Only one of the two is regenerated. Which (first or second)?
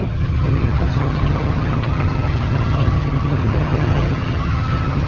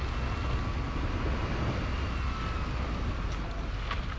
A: first